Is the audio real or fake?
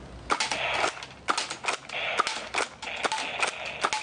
real